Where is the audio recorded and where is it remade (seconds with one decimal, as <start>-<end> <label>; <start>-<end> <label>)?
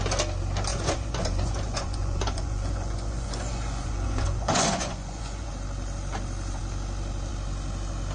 0.0-0.7 recorded; 0.7-5.5 remade; 5.5-8.1 recorded